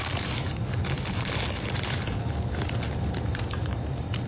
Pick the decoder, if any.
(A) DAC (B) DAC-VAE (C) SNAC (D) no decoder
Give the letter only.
D